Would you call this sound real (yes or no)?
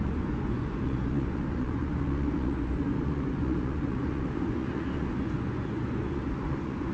no